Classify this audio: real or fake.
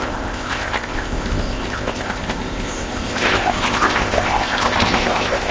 fake